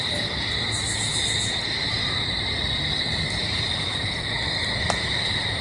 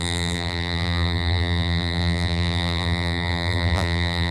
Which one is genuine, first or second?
first